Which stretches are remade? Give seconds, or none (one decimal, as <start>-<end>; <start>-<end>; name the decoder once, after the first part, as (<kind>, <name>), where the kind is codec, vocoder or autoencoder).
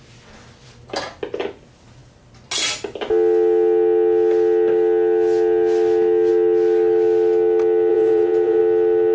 7.9-8.6 (vocoder, Vocos)